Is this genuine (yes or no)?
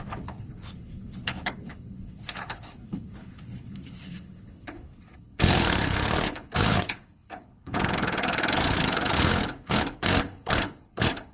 no